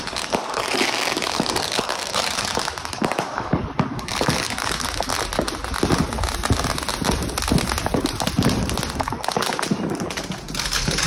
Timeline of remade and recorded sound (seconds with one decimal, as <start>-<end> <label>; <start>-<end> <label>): 0.0-5.1 remade; 5.1-9.0 recorded; 9.0-9.5 remade; 9.5-10.6 recorded; 10.6-11.1 remade